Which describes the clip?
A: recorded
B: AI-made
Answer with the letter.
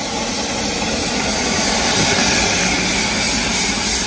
A